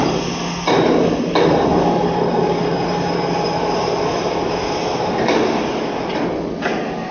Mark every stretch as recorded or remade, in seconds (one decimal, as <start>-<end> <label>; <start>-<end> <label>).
0.0-7.1 recorded